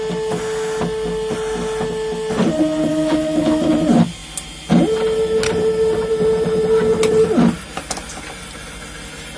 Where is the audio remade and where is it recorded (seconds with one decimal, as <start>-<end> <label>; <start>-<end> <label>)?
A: 0.0-2.9 recorded; 2.9-3.7 remade; 3.7-9.4 recorded